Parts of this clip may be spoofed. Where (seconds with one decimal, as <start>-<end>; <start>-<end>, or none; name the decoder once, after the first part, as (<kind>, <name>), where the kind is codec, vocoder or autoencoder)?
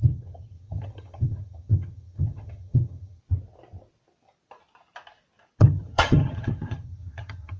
0.0-3.2 (vocoder, HiFi-GAN); 5.6-7.6